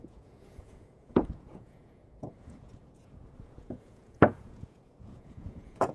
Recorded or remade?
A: remade